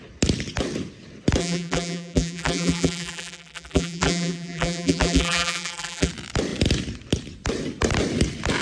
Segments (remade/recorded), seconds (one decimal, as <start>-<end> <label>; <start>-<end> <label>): 0.0-1.4 recorded; 1.4-6.1 remade; 6.1-8.6 recorded